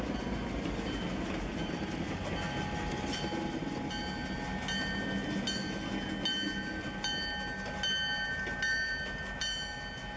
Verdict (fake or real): real